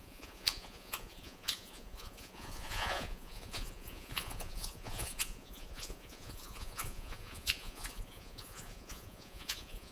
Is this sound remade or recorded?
remade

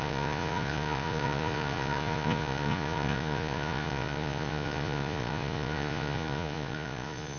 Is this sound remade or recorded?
remade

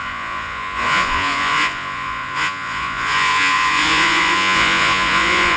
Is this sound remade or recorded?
remade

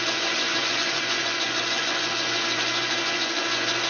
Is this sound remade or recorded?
remade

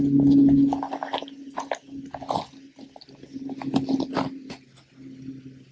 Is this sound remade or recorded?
recorded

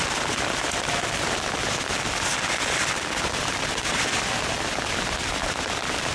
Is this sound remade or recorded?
recorded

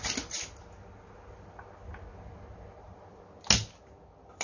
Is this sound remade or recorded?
recorded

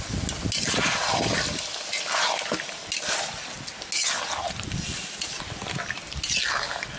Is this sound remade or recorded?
recorded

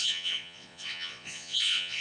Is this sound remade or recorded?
remade